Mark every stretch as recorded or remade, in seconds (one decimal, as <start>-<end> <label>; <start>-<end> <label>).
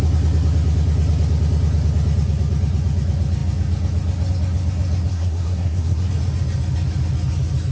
0.0-5.1 recorded; 5.1-6.1 remade; 6.1-7.7 recorded